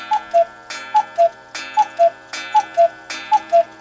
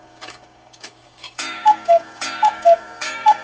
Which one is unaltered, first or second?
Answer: first